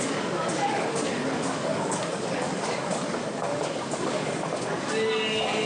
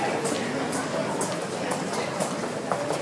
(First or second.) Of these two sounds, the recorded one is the second